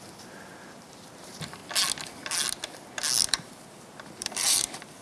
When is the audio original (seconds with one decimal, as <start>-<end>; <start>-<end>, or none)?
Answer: 1.6-3.3